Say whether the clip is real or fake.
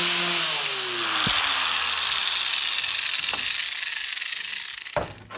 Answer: real